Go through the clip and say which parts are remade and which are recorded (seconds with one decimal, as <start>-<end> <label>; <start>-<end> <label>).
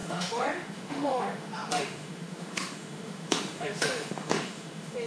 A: 0.0-5.1 remade